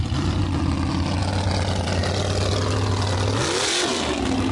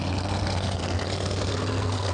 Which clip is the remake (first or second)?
second